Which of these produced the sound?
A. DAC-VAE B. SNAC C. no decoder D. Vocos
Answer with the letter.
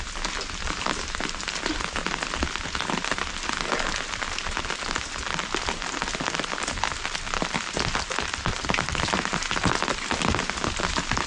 C